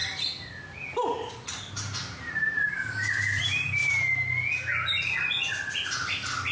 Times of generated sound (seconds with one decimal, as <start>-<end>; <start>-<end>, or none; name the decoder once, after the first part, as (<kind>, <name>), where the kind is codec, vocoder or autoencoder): 0.0-3.9 (vocoder, BigVGAN v2)